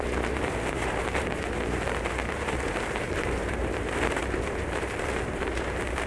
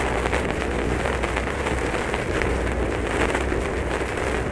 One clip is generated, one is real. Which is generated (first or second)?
first